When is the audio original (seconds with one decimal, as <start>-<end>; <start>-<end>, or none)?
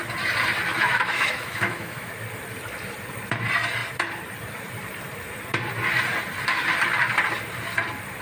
0.0-0.7; 2.1-8.2